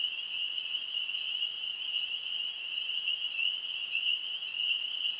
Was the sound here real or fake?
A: fake